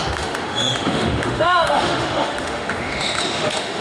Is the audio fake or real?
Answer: fake